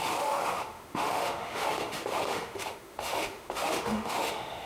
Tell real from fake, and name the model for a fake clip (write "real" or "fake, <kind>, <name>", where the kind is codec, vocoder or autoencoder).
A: fake, autoencoder, DAC-VAE